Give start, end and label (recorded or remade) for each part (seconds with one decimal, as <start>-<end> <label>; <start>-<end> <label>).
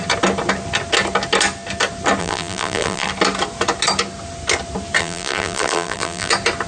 0.0-2.2 recorded; 2.2-3.1 remade; 3.1-5.0 recorded; 5.0-6.3 remade; 6.3-6.7 recorded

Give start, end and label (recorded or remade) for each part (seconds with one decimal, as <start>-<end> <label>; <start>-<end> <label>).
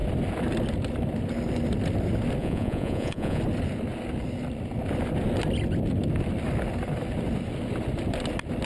0.0-2.4 recorded; 2.4-3.4 remade; 3.4-8.6 recorded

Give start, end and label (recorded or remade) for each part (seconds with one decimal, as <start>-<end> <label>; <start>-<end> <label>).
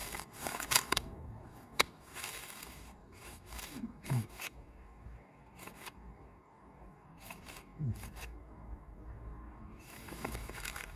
0.0-11.0 remade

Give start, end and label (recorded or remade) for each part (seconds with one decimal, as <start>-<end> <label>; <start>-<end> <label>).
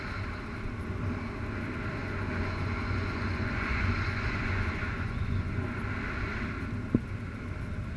0.0-2.0 recorded; 2.0-5.8 remade; 5.8-8.0 recorded